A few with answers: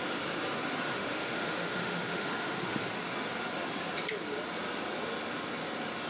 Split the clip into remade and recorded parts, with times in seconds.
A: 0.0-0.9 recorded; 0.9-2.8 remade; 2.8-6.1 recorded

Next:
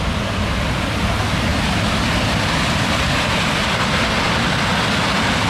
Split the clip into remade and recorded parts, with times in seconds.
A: 0.0-5.5 recorded

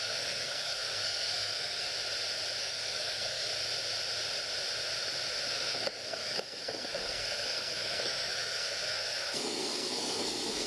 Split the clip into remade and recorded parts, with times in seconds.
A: 0.0-1.9 remade; 1.9-2.6 recorded; 2.6-3.5 remade; 3.5-5.5 recorded; 5.5-10.7 remade

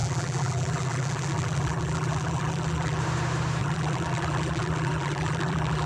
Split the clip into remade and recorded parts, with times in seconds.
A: 0.0-3.0 remade; 3.0-3.6 recorded; 3.6-5.9 remade

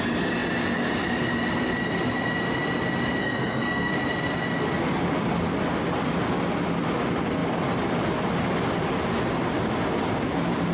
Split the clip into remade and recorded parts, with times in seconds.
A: 0.0-3.2 recorded; 3.2-3.9 remade; 3.9-10.7 recorded